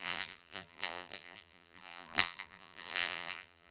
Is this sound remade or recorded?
remade